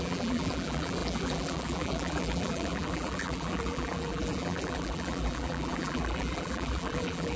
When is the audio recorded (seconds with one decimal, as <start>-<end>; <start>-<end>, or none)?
none